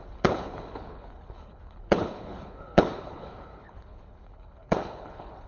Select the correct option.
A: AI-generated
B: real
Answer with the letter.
A